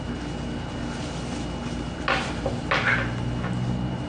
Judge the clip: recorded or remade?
recorded